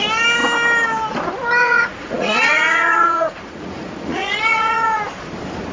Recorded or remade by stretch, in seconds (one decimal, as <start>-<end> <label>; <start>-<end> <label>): 0.0-1.6 recorded; 1.6-5.0 remade; 5.0-5.7 recorded